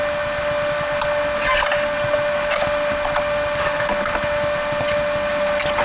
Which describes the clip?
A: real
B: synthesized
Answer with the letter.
A